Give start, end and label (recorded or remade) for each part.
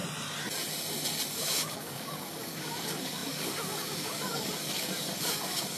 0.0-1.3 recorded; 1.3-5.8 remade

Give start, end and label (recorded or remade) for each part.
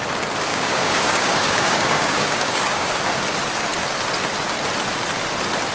0.0-0.5 recorded; 0.5-2.9 remade; 2.9-5.7 recorded